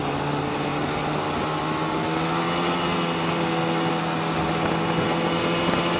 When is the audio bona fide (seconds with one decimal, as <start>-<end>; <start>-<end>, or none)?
0.0-6.0